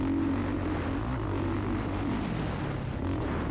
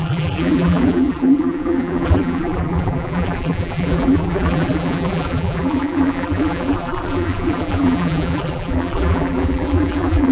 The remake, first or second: second